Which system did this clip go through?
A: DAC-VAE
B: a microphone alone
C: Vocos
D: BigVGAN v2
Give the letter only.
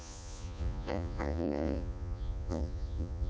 C